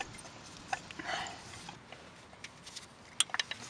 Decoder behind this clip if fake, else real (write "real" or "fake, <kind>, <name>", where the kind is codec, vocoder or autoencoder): real